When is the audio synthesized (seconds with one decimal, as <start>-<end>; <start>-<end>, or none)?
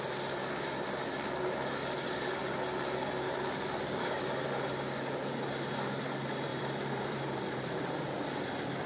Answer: 6.5-8.2